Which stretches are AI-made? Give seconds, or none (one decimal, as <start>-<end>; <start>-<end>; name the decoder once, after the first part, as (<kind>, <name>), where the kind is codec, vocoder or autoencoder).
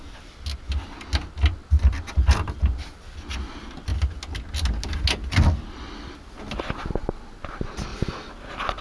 none